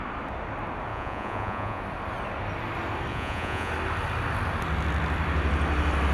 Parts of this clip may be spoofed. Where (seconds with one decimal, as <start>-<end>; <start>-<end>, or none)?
0.9-1.8; 3.1-3.7